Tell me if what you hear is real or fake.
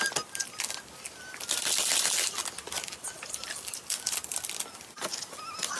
real